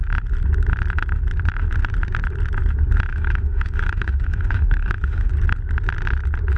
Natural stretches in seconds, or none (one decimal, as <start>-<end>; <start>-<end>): 0.0-3.1; 5.3-6.6